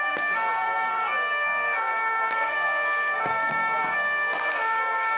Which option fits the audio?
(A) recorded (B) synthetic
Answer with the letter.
B